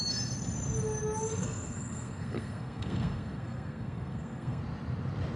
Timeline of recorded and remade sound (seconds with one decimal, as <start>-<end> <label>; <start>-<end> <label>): 0.0-1.4 recorded; 1.4-4.6 remade; 4.6-5.4 recorded